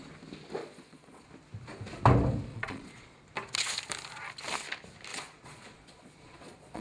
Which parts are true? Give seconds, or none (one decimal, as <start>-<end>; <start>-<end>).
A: 0.0-0.6; 1.3-2.5; 3.2-5.1